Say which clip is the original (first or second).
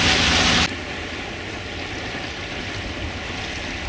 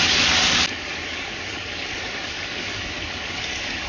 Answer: first